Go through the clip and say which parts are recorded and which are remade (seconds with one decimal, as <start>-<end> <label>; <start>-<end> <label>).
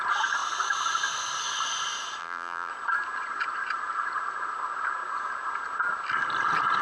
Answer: 0.0-2.2 recorded; 2.2-2.7 remade; 2.7-6.8 recorded